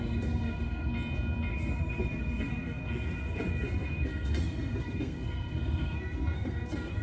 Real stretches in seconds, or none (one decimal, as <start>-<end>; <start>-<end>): 0.9-1.5